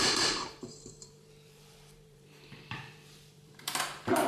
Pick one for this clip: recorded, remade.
remade